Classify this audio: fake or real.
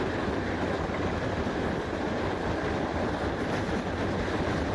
real